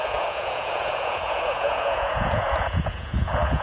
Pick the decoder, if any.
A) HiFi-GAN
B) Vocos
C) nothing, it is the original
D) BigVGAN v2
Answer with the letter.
B